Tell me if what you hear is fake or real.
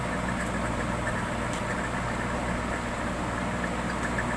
real